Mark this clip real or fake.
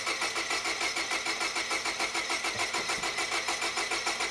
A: real